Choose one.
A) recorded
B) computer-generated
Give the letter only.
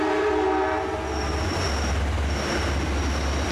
A